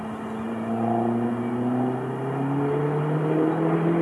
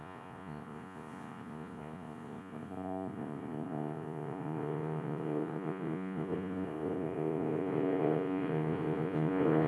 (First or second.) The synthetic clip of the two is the second